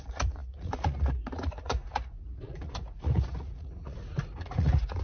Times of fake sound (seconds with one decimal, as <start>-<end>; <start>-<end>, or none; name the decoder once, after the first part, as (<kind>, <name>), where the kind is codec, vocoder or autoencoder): 0.0-5.0 (vocoder, Vocos)